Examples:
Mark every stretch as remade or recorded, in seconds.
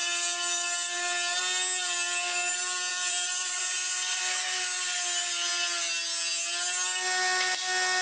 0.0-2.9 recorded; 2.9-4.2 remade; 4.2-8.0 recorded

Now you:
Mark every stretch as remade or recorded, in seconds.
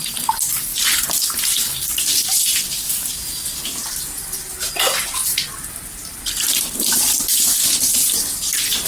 0.0-8.9 recorded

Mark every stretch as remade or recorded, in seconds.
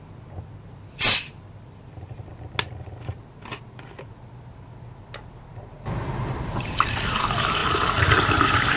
0.0-2.3 remade; 2.3-6.1 recorded; 6.1-8.8 remade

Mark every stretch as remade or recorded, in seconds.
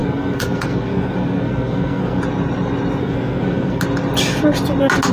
0.0-2.2 remade; 2.2-3.0 recorded; 3.0-3.8 remade; 3.8-5.1 recorded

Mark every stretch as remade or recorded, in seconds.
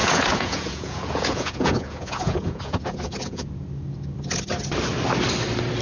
0.0-3.5 remade; 3.5-5.8 recorded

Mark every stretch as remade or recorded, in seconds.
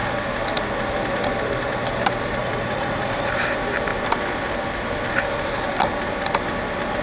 0.0-2.4 recorded; 2.4-3.3 remade; 3.3-7.0 recorded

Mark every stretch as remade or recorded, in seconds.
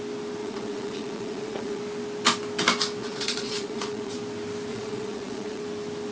0.0-0.4 recorded; 0.4-1.8 remade; 1.8-3.0 recorded; 3.0-4.1 remade; 4.1-4.7 recorded; 4.7-5.6 remade; 5.6-6.1 recorded